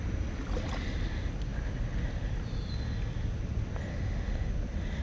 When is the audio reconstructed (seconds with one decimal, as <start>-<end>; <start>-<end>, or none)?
3.9-4.5